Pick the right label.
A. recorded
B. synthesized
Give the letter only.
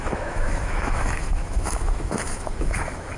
B